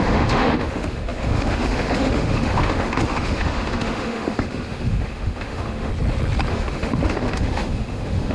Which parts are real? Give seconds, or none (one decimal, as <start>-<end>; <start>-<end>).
5.9-6.5